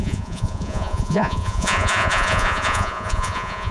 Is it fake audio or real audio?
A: fake